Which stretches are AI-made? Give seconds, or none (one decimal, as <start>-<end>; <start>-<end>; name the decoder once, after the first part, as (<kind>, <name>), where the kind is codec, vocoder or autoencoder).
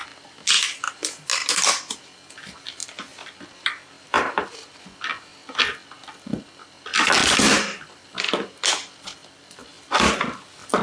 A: none